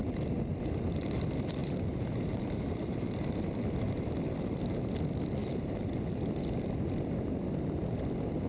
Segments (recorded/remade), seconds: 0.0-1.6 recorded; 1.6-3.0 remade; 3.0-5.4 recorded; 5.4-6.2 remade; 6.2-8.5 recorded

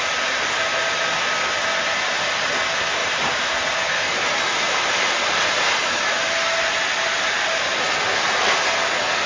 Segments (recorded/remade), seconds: 0.0-3.0 recorded; 3.0-3.8 remade; 3.8-9.3 recorded